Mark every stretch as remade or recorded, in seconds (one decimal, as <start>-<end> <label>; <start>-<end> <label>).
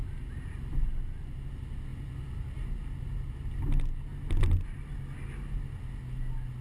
0.0-6.6 recorded